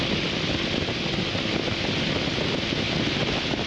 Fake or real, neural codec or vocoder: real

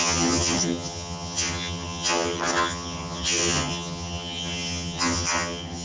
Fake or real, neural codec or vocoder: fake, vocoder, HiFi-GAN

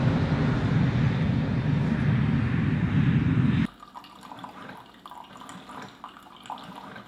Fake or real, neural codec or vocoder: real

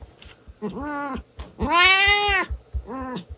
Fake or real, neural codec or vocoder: real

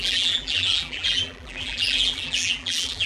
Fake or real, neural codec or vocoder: fake, vocoder, BigVGAN v2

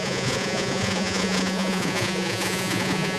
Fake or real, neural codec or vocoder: fake, vocoder, Vocos